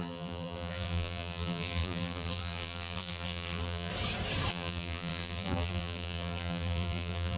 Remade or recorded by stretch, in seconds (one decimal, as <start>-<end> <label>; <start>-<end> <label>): 0.0-3.9 remade; 3.9-4.5 recorded; 4.5-7.4 remade